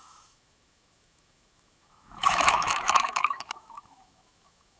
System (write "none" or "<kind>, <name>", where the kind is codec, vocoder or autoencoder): autoencoder, DAC-VAE